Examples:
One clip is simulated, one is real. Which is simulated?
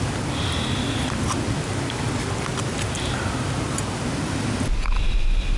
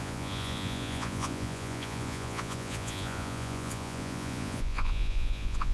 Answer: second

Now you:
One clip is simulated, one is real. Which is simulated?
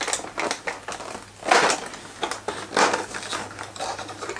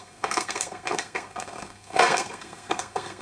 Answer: second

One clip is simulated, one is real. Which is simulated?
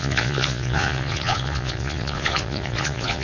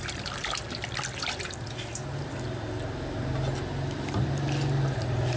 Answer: first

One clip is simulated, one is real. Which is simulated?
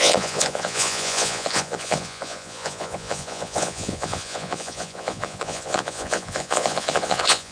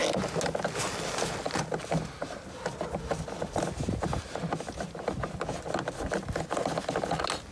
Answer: first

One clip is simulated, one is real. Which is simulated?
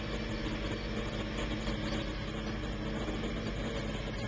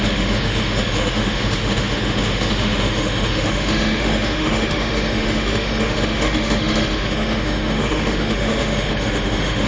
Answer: second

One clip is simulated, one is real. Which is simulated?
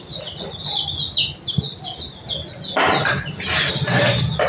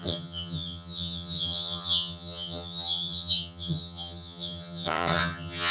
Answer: second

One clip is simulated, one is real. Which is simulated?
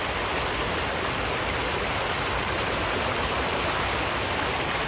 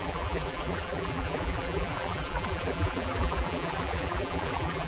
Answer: second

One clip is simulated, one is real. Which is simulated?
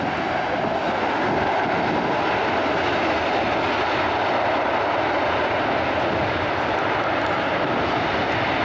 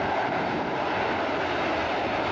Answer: second